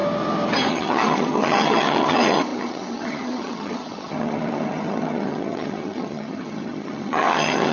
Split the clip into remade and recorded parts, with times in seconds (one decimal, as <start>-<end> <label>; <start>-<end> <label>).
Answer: 0.0-0.7 recorded; 0.7-7.7 remade